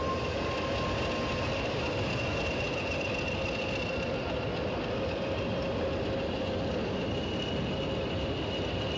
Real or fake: real